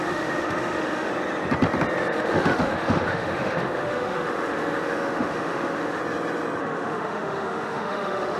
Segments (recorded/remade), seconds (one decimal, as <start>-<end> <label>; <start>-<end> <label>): 0.0-1.1 remade; 1.1-2.1 recorded; 2.1-6.0 remade; 6.0-6.6 recorded; 6.6-8.4 remade